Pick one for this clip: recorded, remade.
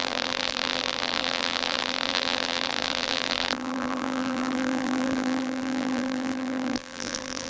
remade